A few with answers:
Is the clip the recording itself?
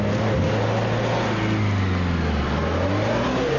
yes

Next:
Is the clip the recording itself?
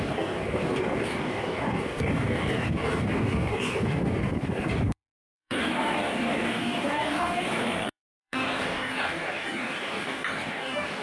no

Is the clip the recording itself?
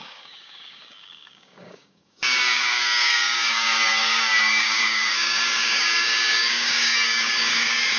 no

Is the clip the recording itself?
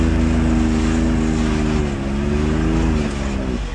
yes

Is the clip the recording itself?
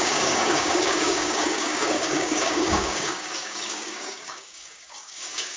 no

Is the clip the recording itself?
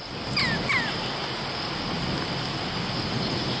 yes